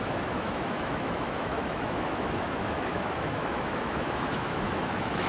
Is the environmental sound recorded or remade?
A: remade